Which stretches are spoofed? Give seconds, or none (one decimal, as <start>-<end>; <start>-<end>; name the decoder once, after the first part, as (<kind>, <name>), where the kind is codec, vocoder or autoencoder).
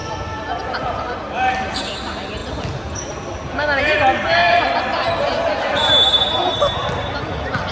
none